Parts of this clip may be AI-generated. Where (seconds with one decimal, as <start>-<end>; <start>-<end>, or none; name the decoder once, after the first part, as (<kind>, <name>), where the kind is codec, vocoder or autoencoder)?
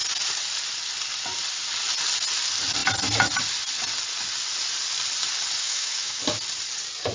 5.6-6.2 (autoencoder, DAC-VAE)